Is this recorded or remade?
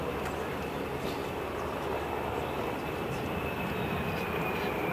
recorded